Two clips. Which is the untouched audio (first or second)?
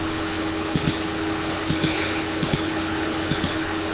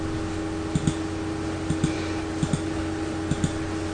second